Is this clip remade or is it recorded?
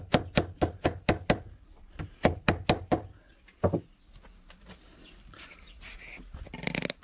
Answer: recorded